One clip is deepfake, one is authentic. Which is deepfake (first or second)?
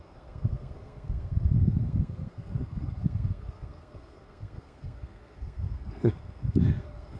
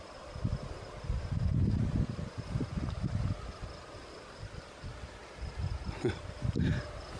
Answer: first